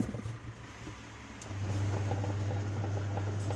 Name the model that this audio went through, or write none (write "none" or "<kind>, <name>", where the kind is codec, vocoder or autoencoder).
none